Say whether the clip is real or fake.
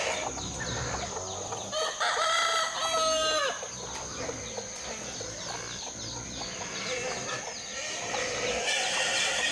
real